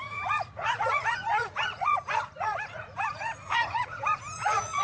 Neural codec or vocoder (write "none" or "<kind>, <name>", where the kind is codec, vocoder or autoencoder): vocoder, Vocos